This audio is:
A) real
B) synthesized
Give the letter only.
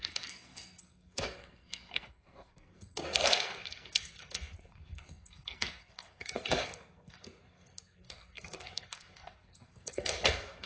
B